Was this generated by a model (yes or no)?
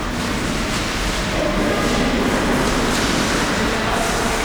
no